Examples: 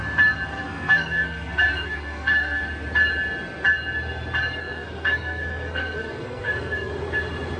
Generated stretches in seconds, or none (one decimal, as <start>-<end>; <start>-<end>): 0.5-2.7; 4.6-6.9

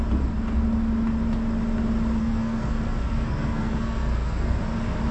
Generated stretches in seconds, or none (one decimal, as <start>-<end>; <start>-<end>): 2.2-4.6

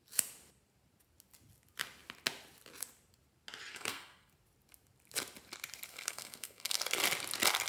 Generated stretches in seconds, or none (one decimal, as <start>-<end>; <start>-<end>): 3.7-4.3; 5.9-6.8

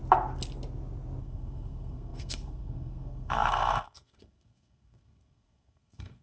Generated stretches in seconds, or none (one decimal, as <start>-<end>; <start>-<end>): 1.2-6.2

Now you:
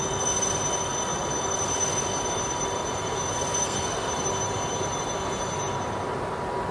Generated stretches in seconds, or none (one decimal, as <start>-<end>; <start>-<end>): 3.6-4.1